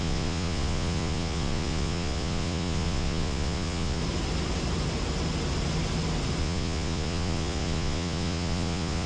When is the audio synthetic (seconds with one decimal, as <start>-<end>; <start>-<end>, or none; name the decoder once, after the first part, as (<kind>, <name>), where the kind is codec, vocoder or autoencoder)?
0.0-4.0 (vocoder, Vocos); 6.4-9.1